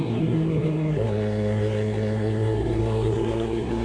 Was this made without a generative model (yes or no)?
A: no